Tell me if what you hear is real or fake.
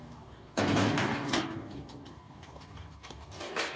fake